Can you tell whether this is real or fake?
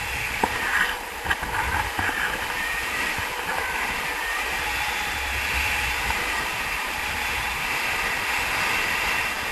real